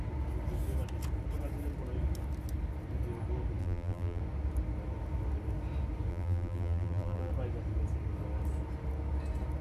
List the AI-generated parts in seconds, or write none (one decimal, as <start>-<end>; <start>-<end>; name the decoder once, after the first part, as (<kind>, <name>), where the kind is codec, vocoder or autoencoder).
3.6-4.2 (vocoder, BigVGAN v2); 6.1-7.3